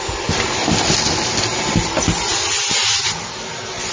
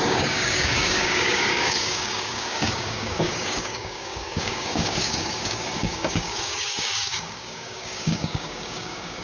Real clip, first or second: first